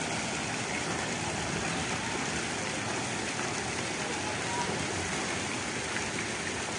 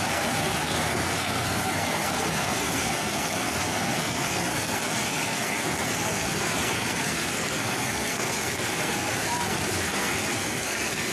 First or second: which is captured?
first